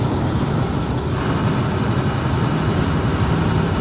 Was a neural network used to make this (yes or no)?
no